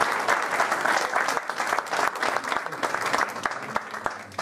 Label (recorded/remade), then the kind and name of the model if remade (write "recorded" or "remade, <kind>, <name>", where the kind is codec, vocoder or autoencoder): recorded